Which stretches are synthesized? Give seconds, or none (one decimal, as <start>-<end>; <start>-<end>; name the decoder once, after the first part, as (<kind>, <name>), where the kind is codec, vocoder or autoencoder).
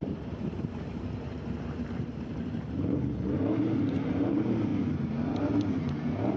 0.0-4.7 (vocoder, BigVGAN v2); 5.7-6.4